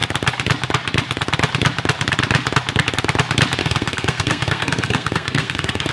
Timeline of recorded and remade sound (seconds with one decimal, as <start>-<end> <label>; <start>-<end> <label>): 0.0-3.6 recorded; 3.6-5.9 remade